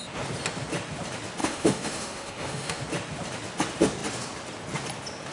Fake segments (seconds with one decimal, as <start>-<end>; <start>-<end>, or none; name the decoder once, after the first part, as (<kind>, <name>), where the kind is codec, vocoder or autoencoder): 1.4-2.8 (autoencoder, DAC-VAE)